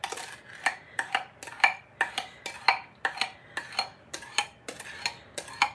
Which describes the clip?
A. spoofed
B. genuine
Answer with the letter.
B